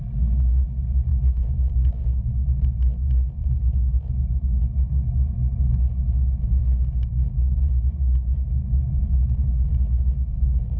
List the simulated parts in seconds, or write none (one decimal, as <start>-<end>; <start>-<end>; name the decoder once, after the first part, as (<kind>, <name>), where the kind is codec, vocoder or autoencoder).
none